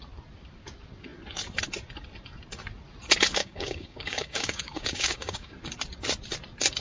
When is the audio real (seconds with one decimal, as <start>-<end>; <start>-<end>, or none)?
0.0-3.4; 5.5-6.8